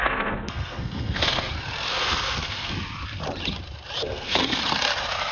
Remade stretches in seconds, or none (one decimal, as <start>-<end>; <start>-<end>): 0.0-1.5; 1.9-2.7; 4.0-4.6